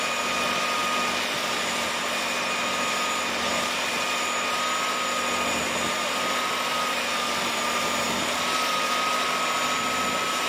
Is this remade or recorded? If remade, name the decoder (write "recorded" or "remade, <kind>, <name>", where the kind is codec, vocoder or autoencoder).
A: recorded